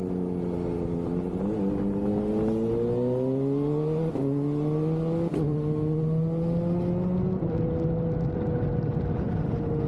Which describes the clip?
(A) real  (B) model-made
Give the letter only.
A